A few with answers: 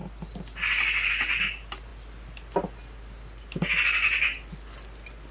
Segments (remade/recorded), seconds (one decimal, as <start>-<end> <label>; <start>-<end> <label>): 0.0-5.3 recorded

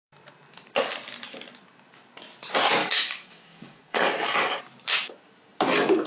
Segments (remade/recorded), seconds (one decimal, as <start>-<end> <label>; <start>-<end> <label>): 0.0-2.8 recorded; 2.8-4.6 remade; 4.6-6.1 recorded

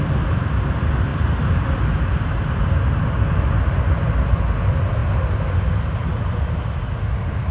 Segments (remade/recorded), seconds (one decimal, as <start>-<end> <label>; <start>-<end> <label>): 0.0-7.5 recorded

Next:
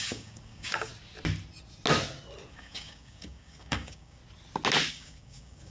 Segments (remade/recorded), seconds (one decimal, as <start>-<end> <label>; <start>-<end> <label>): 0.0-0.9 remade; 0.9-2.5 recorded; 2.5-4.2 remade; 4.2-4.9 recorded; 4.9-5.7 remade

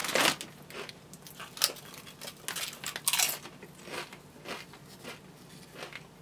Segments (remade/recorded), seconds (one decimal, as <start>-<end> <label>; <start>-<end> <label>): 0.0-6.2 recorded